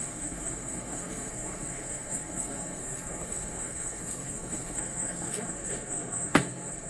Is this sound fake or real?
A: fake